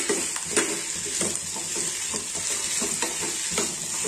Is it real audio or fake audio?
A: real